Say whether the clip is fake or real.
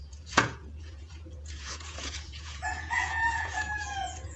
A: fake